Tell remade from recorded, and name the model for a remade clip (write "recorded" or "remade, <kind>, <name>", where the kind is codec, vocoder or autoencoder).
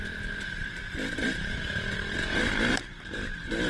remade, vocoder, BigVGAN v2